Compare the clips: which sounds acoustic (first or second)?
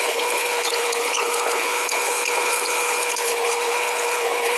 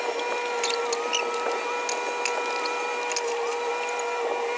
second